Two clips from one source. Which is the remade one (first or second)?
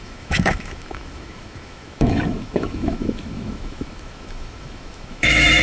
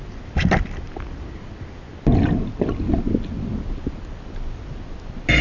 first